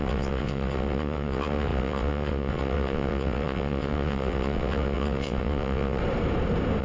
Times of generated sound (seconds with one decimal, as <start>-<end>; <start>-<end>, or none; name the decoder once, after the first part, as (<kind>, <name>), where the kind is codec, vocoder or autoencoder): 0.0-6.0 (vocoder, WaveNeXt)